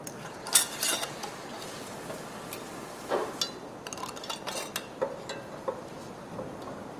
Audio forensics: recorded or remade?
recorded